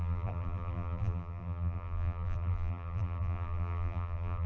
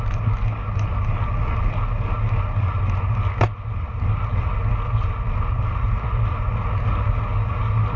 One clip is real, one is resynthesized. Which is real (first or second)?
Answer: second